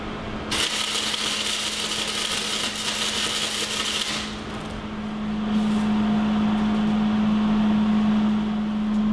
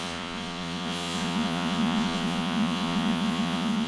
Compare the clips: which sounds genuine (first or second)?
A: first